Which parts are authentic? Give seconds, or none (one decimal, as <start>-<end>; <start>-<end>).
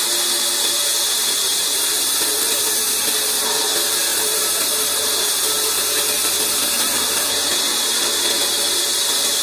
0.0-1.4; 2.9-4.1; 5.3-6.6; 7.5-9.4